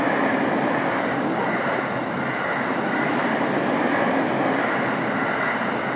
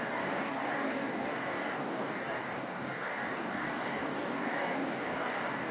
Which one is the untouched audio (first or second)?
first